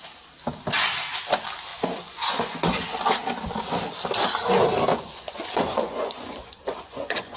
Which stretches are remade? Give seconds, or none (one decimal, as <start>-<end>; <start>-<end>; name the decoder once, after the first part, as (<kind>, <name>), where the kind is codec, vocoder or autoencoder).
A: 1.7-2.6 (vocoder, Vocos); 4.9-7.4